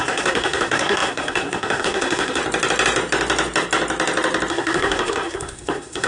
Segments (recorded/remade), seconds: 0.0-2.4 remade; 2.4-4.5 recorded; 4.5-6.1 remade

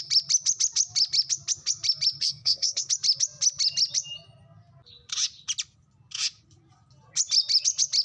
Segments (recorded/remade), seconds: 0.0-2.2 recorded; 2.2-2.9 remade; 2.9-8.0 recorded

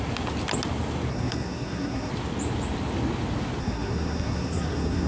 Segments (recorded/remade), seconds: 0.0-1.1 recorded; 1.1-2.1 remade; 2.1-3.6 recorded; 3.6-5.1 remade

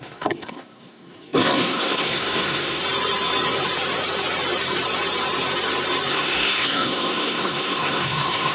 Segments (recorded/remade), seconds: 0.0-2.8 remade; 2.8-6.1 recorded; 6.1-8.5 remade

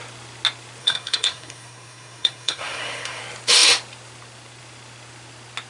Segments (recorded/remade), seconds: 0.0-0.8 recorded; 0.8-3.2 remade; 3.2-5.7 recorded